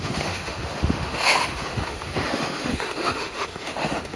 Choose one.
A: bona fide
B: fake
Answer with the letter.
B